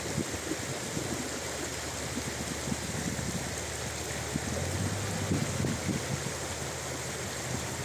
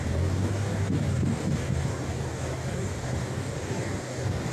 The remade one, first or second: second